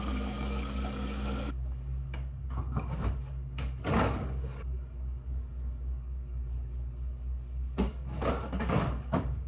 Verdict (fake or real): fake